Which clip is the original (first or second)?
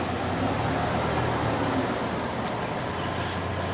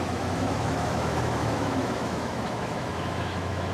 first